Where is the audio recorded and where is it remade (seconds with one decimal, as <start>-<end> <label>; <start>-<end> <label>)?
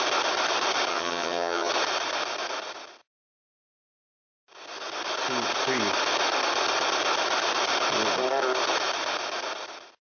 0.0-0.9 recorded; 0.9-1.7 remade; 1.7-10.1 recorded